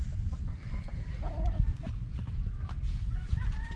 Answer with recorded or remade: remade